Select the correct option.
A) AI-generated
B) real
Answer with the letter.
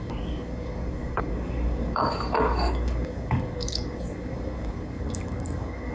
A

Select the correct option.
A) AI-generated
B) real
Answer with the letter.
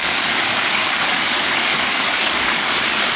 A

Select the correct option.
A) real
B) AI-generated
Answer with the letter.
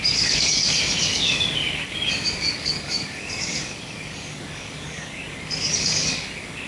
B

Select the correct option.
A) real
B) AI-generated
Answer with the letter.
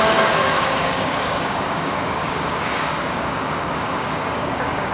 B